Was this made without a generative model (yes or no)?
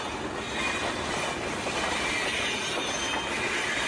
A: yes